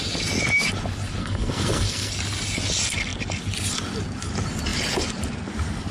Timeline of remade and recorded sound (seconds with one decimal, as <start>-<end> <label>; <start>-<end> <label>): 0.0-1.2 recorded; 1.2-2.1 remade; 2.1-5.9 recorded